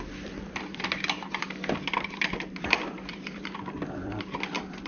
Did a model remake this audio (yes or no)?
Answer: yes